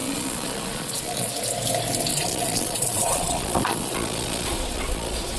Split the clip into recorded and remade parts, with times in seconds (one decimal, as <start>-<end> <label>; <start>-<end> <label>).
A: 0.0-1.3 remade; 1.3-2.1 recorded; 2.1-5.4 remade